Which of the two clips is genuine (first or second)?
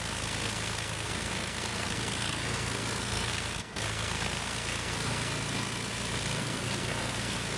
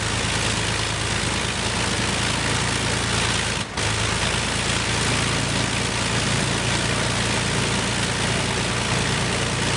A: second